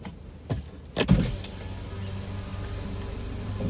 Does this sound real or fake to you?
real